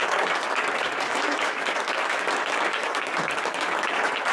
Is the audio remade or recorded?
remade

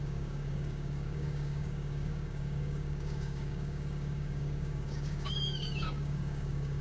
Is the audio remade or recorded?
remade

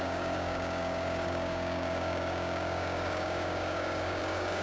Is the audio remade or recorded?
remade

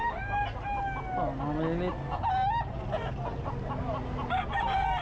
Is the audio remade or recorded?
recorded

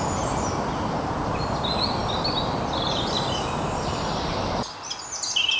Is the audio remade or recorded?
recorded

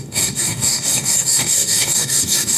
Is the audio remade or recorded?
remade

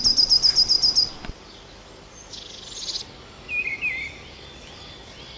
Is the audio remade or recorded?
recorded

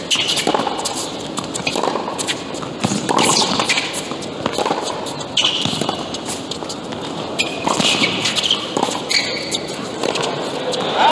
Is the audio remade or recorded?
recorded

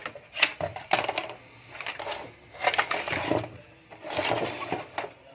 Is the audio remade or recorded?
recorded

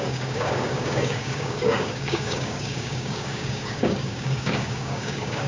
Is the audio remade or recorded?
remade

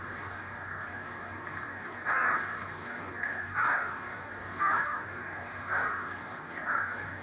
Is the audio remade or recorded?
remade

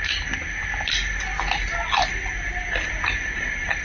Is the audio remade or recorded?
recorded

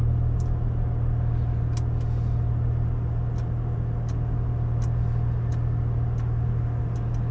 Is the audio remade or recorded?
recorded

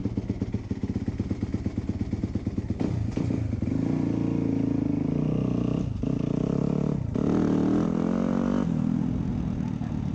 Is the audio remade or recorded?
recorded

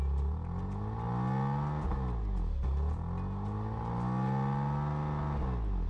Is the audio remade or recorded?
recorded